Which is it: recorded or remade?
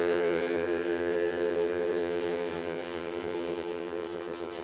remade